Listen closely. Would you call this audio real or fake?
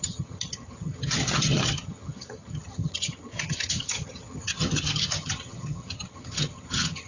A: fake